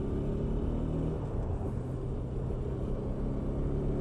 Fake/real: real